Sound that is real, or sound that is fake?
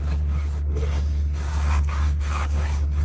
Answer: fake